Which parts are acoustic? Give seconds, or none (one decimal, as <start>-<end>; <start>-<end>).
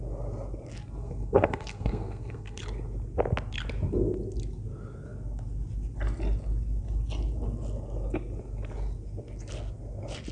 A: 0.0-1.0; 2.6-10.3